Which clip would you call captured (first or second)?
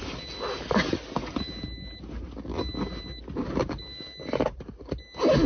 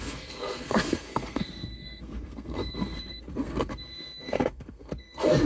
first